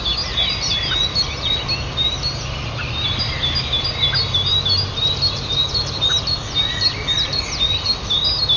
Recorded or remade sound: recorded